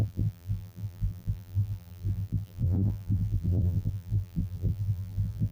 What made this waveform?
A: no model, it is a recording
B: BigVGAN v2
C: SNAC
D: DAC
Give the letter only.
B